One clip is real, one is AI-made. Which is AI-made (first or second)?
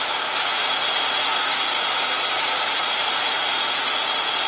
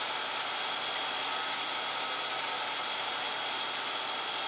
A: first